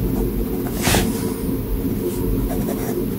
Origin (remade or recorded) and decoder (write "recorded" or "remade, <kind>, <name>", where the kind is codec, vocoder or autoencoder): recorded